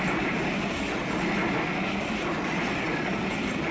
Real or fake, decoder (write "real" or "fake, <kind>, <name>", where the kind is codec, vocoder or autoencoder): real